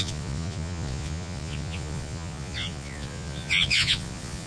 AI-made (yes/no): yes